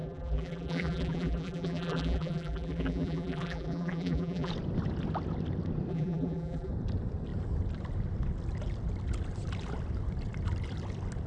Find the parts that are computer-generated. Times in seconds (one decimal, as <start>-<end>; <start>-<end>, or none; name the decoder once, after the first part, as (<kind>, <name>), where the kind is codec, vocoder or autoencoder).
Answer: 0.0-4.5 (vocoder, BigVGAN v2); 5.9-6.7